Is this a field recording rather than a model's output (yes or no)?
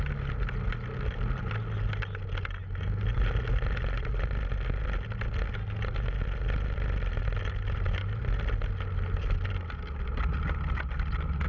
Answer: yes